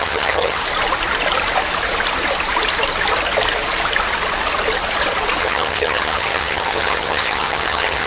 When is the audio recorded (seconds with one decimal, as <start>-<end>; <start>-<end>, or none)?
0.6-5.4